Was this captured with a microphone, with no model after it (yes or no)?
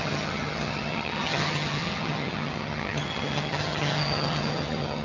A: no